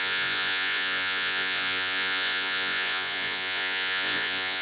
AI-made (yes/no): yes